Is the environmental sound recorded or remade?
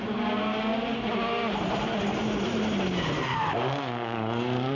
recorded